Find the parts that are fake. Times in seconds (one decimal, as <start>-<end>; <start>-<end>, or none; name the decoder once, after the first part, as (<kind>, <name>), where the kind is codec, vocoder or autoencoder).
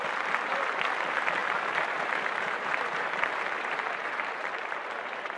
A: 1.4-4.6 (vocoder, BigVGAN v2)